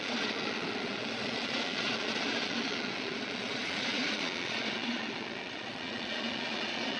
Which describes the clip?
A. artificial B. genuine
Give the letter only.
A